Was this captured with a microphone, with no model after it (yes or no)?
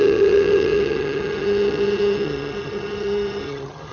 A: no